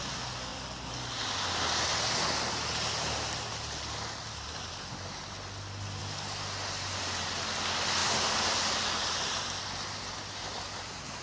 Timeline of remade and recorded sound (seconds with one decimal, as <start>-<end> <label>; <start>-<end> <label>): 0.0-11.2 recorded